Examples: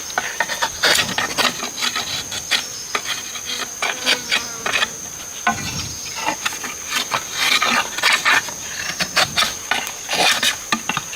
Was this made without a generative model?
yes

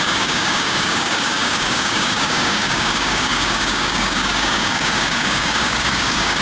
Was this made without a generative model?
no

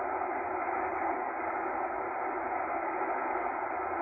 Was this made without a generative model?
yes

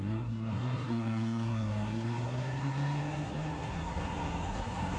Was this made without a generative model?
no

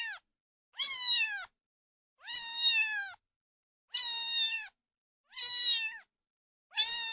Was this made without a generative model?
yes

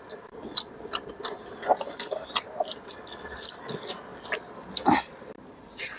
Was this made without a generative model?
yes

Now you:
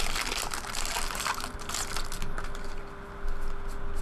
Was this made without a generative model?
yes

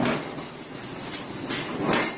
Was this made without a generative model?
yes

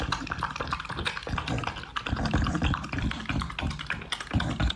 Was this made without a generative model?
yes